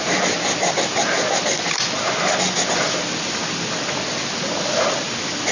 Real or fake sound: real